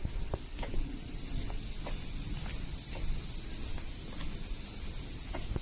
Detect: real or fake real